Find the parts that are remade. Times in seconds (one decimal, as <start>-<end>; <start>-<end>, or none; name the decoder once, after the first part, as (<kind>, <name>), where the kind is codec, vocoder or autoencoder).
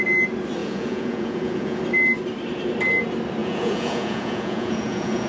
0.6-1.8 (vocoder, Vocos); 3.4-5.3